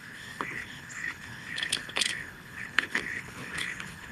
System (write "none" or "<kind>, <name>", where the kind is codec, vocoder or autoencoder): codec, HILCodec